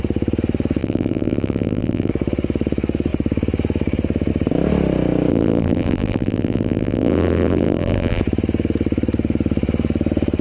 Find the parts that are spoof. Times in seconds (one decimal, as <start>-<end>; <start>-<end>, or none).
0.8-2.1; 5.3-8.2